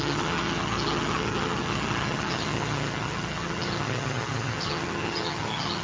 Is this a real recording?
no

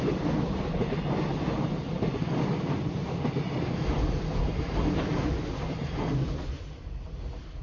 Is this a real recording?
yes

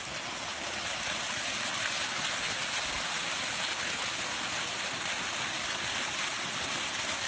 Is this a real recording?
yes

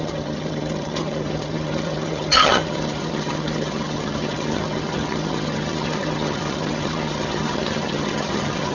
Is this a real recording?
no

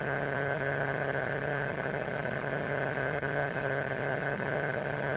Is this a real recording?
no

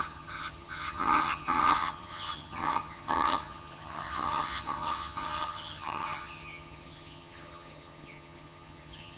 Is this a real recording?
no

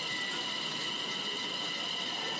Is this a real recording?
yes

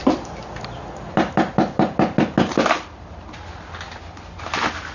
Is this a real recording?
yes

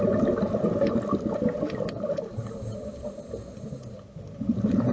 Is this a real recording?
yes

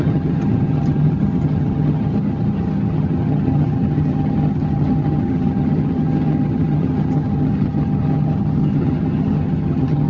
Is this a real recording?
no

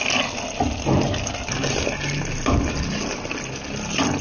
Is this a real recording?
yes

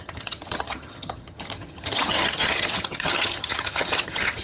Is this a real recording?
no